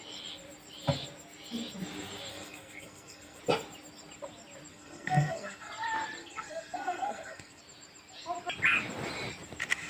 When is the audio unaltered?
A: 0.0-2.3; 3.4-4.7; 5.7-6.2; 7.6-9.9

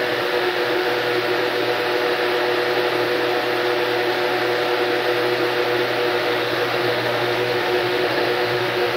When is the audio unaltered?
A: 0.9-6.1

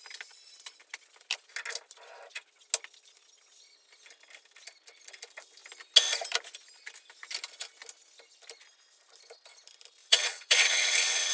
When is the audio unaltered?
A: 0.0-10.0

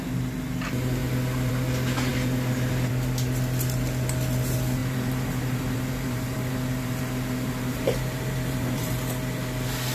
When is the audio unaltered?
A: 0.0-4.8; 8.9-9.9